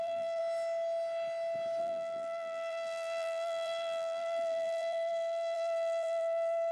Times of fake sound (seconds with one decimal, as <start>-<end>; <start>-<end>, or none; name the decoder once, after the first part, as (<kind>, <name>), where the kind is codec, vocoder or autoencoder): 0.0-0.4 (vocoder, BigVGAN v2); 1.8-6.7